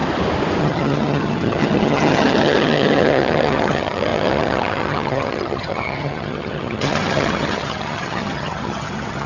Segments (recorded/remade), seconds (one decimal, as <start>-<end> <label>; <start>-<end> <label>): 0.0-0.6 recorded; 0.6-9.3 remade